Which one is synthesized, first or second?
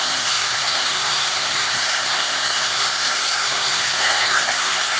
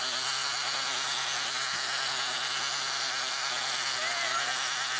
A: first